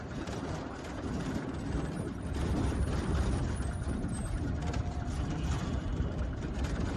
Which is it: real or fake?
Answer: fake